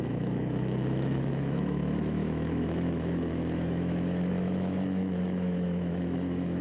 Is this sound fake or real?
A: fake